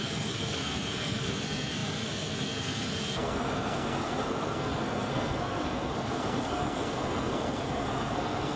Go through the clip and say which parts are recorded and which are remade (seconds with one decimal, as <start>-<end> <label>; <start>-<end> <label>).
0.0-8.6 remade